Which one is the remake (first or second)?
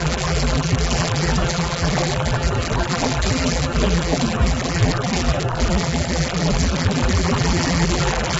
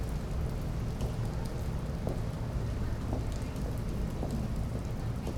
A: first